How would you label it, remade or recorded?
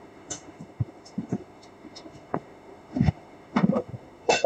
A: remade